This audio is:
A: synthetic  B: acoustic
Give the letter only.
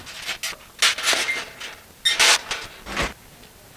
B